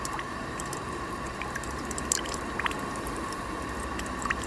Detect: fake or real fake